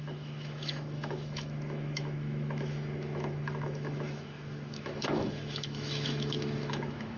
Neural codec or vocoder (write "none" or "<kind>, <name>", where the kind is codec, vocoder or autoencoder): autoencoder, DAC-VAE